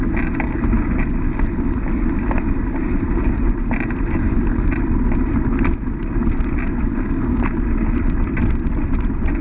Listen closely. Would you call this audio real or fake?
real